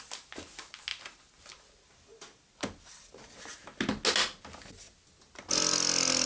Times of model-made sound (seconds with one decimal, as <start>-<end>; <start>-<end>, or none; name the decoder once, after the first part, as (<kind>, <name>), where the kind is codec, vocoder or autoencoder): none